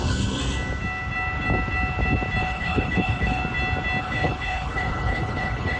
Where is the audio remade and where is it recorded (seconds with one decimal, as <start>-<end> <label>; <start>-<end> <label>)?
0.0-0.4 remade; 0.4-2.4 recorded; 2.4-3.4 remade; 3.4-4.0 recorded; 4.0-5.8 remade